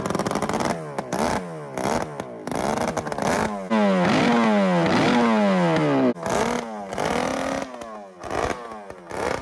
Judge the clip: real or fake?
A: real